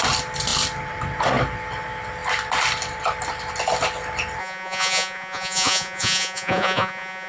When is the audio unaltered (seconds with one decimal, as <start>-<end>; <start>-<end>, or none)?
0.0-4.4